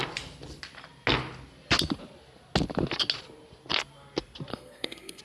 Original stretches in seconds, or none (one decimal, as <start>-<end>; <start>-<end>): 0.0-4.5